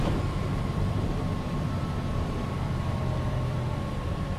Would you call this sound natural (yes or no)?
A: no